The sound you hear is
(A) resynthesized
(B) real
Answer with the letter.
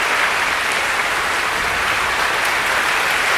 A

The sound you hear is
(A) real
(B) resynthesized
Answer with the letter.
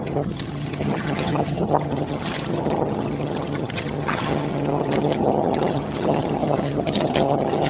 B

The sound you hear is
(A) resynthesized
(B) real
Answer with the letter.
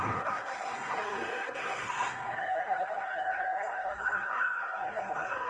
A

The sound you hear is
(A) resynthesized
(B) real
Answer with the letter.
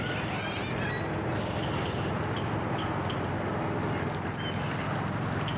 B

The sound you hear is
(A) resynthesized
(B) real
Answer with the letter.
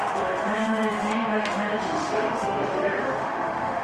A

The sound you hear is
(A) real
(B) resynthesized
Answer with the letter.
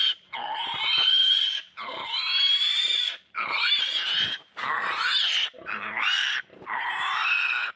B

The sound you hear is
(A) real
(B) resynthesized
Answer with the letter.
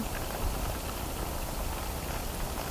A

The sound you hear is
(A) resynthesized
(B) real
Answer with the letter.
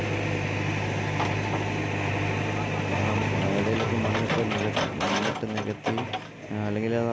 B